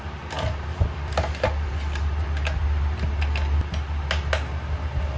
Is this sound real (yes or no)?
yes